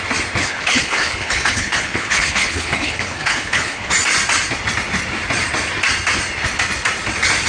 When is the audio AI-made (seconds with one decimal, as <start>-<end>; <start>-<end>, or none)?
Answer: 0.4-3.9